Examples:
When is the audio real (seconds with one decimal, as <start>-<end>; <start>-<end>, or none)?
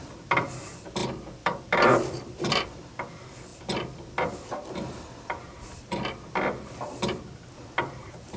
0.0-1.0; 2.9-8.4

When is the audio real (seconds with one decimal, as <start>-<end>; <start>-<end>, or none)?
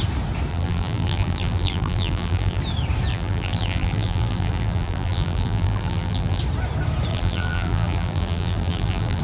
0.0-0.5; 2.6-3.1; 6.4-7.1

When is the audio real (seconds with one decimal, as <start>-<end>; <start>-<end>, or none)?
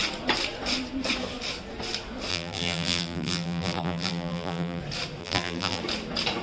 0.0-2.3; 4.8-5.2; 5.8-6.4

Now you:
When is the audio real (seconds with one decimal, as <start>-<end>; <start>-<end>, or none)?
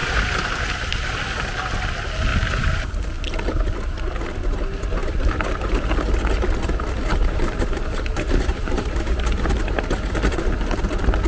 1.1-2.3; 2.9-5.0; 5.8-7.1; 9.5-11.3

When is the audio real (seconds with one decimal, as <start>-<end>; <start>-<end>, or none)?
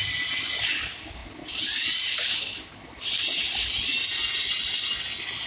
0.0-5.5